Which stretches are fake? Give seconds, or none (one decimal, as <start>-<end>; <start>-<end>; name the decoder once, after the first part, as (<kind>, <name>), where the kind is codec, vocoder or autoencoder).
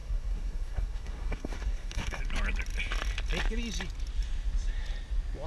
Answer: 0.0-2.2 (codec, SNAC)